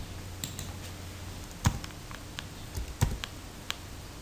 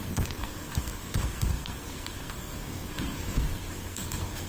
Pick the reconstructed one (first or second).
second